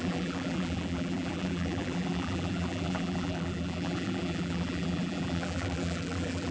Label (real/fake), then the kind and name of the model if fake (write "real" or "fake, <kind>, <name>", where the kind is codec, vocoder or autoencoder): fake, vocoder, BigVGAN v2